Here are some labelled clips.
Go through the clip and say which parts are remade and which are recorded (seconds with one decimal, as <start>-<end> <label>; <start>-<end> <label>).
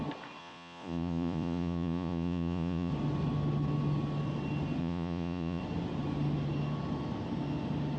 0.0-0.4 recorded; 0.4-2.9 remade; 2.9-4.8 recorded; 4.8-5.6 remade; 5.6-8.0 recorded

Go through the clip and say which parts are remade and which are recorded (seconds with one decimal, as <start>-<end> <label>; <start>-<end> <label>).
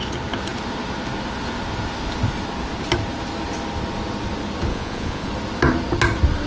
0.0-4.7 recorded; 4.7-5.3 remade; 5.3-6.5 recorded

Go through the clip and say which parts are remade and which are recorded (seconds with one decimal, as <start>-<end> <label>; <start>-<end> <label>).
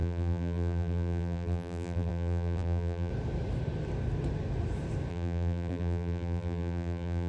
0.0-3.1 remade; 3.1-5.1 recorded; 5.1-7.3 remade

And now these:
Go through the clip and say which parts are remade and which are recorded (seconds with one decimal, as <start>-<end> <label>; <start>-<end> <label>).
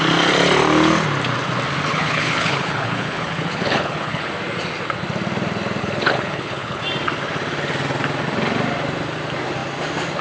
0.0-1.9 recorded; 1.9-4.3 remade; 4.3-5.8 recorded; 5.8-6.8 remade; 6.8-10.2 recorded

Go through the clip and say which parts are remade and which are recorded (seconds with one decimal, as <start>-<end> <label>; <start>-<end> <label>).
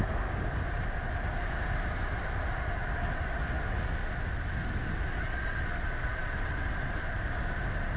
0.0-8.0 recorded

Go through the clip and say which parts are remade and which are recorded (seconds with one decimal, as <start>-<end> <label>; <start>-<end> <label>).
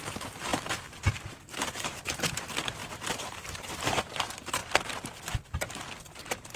0.0-4.6 remade; 4.6-6.0 recorded; 6.0-6.6 remade